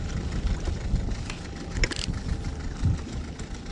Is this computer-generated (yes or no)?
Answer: no